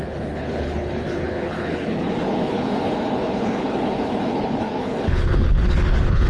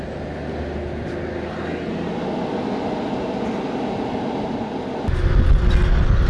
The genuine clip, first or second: second